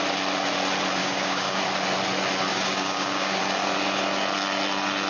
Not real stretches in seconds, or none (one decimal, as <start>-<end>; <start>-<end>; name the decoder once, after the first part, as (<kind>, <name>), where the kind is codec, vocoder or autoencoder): 1.0-1.6 (codec, DAC); 2.5-3.4